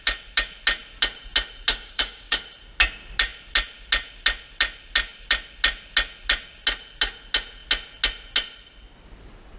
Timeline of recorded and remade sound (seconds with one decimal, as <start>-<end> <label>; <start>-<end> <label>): 0.0-1.7 recorded; 1.7-2.4 remade; 2.4-9.6 recorded